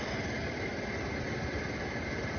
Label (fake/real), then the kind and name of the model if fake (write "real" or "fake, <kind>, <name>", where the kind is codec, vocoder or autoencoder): fake, vocoder, BigVGAN v2